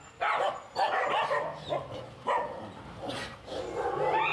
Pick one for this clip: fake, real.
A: real